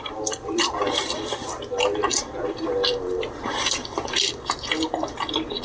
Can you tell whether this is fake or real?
real